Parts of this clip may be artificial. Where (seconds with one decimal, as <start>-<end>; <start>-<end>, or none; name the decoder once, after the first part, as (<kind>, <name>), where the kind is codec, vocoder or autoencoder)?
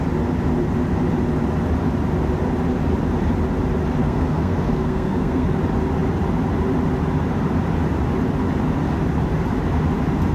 4.0-5.6 (codec, SNAC)